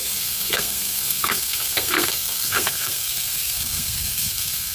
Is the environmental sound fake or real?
fake